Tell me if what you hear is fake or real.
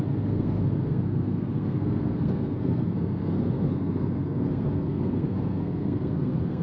fake